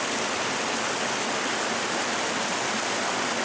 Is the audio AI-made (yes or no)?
no